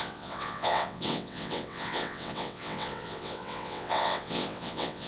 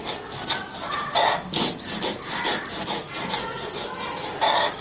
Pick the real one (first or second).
second